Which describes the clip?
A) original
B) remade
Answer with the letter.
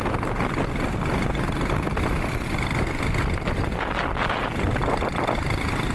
A